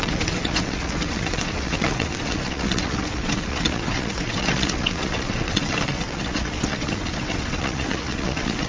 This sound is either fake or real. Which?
fake